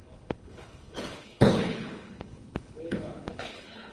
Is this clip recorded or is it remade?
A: remade